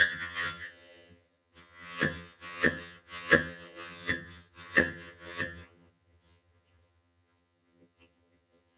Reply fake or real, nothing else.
fake